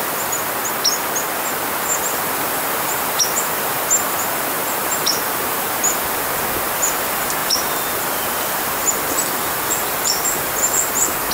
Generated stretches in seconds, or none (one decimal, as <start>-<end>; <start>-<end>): 7.4-10.9